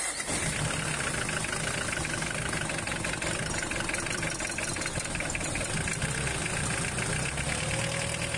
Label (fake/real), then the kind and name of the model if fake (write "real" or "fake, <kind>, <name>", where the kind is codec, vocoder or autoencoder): real